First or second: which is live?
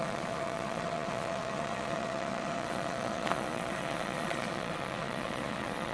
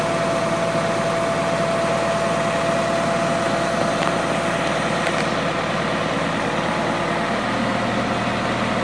second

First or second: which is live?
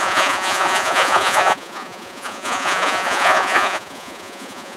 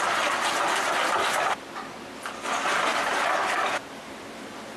second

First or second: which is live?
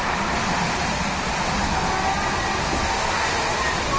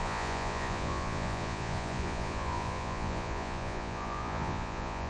first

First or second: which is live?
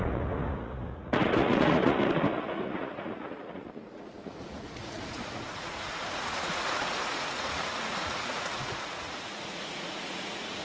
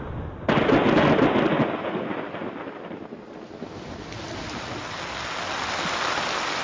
second